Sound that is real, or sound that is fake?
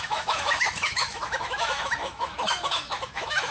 fake